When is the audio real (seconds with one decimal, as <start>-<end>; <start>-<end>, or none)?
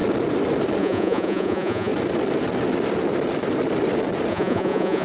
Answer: 0.0-0.8; 1.9-4.3